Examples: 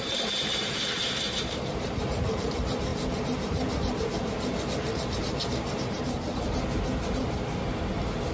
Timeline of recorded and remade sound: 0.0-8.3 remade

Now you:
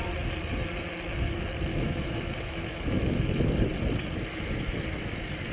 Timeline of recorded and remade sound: 0.0-1.7 recorded; 1.7-3.2 remade; 3.2-5.5 recorded

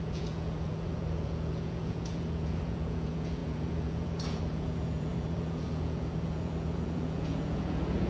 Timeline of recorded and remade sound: 0.0-8.1 remade

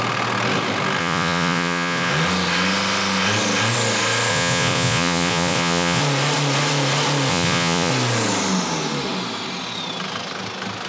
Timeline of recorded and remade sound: 0.0-1.0 recorded; 1.0-2.1 remade; 2.1-4.3 recorded; 4.3-6.0 remade; 6.0-7.3 recorded; 7.3-7.9 remade; 7.9-10.9 recorded